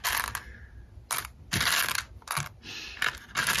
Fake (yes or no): no